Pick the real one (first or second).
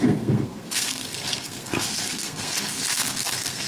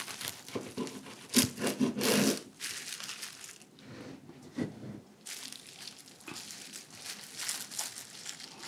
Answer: second